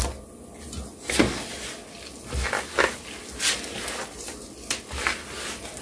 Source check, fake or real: real